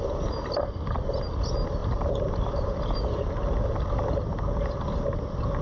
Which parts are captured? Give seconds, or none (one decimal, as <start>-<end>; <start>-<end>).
0.0-1.8; 3.4-5.6